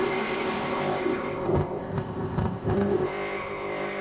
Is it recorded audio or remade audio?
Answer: remade